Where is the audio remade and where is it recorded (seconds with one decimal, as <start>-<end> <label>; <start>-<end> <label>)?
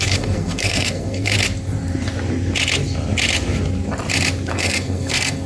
0.0-1.3 remade; 1.3-4.5 recorded; 4.5-5.5 remade